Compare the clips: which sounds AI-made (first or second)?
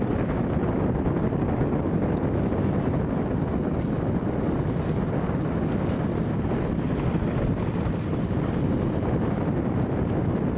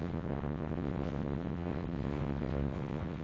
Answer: second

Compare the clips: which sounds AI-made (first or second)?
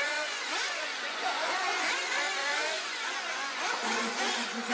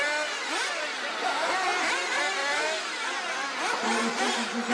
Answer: first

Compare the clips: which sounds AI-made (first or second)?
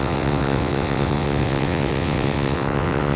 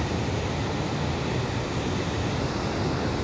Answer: first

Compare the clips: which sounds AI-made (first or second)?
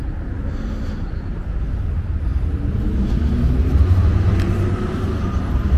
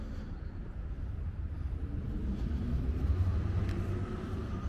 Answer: second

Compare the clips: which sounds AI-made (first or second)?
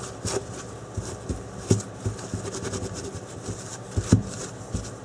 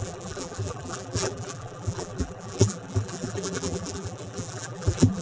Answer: second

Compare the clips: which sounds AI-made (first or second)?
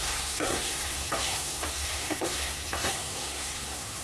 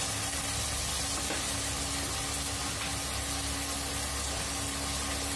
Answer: first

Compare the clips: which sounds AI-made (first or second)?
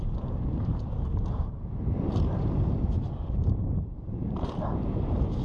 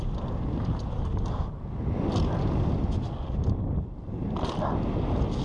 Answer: first